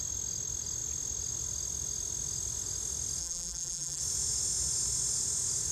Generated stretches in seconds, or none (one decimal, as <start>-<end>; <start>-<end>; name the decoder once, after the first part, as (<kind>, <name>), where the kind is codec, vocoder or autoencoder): 3.2-4.0 (vocoder, BigVGAN v2)